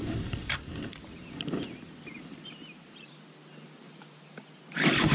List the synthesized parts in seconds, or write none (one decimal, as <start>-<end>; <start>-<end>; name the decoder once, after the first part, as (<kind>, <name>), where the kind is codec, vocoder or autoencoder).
0.0-3.1 (vocoder, BigVGAN v2)